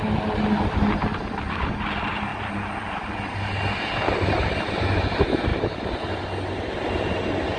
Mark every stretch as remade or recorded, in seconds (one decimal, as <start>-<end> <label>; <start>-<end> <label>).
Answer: 0.0-1.1 recorded; 1.1-1.7 remade; 1.7-7.6 recorded